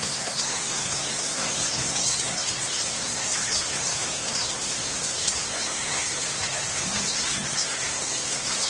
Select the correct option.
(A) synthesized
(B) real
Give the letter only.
A